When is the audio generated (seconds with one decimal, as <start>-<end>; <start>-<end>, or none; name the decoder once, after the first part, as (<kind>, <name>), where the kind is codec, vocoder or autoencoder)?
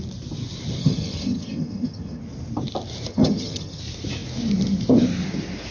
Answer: 0.8-2.2 (vocoder, HiFi-GAN); 3.1-3.8